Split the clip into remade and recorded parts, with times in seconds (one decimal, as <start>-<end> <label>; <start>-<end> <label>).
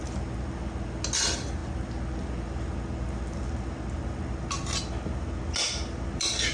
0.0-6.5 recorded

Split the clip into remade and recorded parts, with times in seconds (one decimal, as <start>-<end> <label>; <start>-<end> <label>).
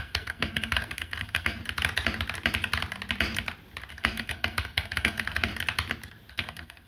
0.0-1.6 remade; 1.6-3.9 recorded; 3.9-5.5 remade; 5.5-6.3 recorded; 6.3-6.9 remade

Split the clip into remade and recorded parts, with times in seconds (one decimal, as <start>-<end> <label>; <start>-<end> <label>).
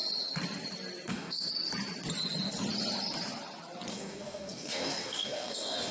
0.0-1.1 recorded; 1.1-1.5 remade; 1.5-3.9 recorded; 3.9-5.9 remade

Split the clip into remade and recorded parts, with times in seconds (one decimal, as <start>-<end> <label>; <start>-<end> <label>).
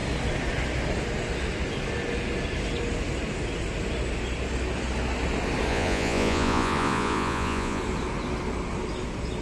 0.0-5.7 recorded; 5.7-7.8 remade; 7.8-9.4 recorded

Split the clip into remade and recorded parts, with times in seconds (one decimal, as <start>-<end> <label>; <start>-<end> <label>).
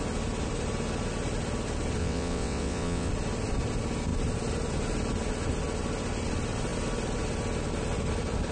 0.0-2.0 recorded; 2.0-3.1 remade; 3.1-8.5 recorded